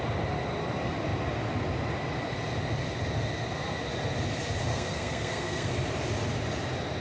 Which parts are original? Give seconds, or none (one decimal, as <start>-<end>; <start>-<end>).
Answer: 0.0-4.7; 5.7-7.0